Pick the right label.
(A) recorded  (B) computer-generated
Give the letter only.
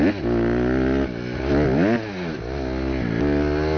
A